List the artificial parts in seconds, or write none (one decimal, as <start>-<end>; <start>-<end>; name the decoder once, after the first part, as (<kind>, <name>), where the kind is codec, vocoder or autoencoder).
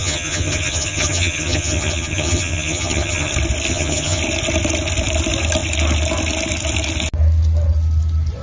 0.0-3.3 (vocoder, HiFi-GAN); 3.7-4.2